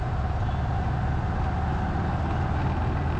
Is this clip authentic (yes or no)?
yes